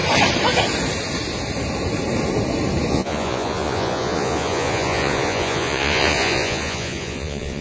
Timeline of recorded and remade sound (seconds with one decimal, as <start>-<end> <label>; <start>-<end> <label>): 0.0-2.9 recorded; 2.9-7.6 remade